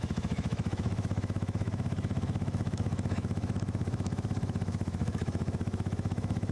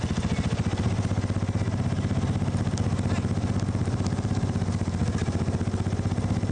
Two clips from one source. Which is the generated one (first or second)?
first